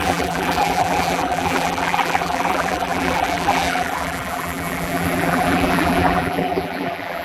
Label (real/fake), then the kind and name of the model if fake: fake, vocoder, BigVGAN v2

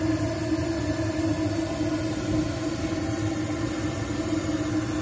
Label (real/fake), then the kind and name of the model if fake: real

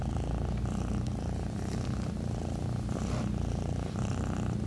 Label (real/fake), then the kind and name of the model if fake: real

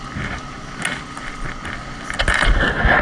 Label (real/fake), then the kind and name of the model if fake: real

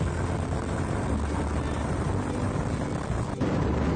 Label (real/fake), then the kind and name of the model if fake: real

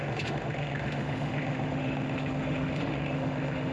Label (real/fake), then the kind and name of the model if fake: fake, autoencoder, DAC-VAE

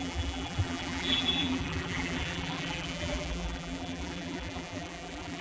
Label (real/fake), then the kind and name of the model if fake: fake, vocoder, BigVGAN v2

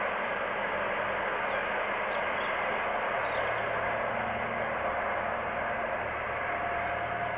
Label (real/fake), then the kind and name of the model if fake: real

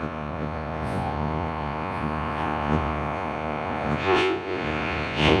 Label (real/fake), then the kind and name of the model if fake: fake, vocoder, Vocos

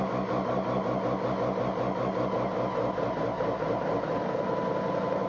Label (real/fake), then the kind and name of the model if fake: real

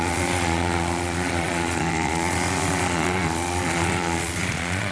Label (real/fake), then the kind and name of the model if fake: fake, vocoder, Vocos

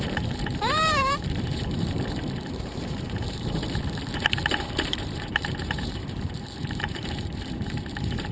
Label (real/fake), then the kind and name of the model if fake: fake, vocoder, BigVGAN v2